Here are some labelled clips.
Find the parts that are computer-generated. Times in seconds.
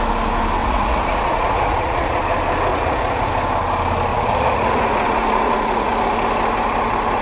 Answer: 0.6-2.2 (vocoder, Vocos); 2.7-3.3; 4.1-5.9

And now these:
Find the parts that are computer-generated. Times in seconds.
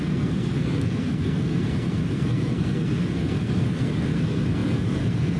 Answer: 0.0-5.4 (codec, SNAC)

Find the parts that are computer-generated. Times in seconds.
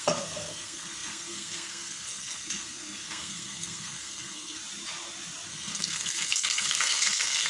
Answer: 0.0-4.6 (codec, SNAC); 5.5-7.5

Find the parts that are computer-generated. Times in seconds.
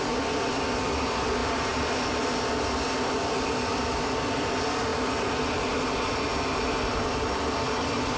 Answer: none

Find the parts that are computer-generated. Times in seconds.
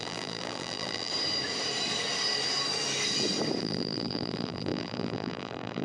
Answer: 0.0-1.1 (vocoder, BigVGAN v2); 3.6-5.8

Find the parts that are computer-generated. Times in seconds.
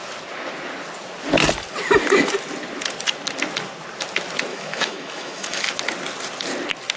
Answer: 4.5-5.6 (autoencoder, DAC-VAE)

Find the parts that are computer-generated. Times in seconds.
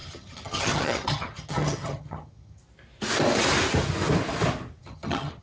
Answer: 0.0-2.6 (vocoder, HiFi-GAN); 4.8-5.4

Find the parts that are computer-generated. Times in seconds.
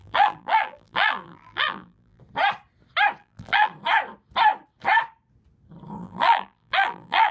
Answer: 0.0-2.2 (vocoder, BigVGAN v2); 3.2-3.7; 6.0-7.3